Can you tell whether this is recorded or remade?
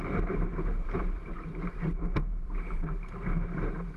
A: remade